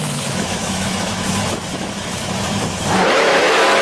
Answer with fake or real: fake